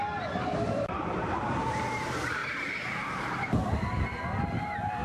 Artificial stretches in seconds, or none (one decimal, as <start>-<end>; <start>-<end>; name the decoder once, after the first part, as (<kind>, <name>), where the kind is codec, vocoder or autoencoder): 0.0-2.4 (vocoder, BigVGAN v2); 4.5-5.0